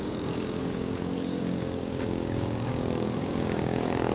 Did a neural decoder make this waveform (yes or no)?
yes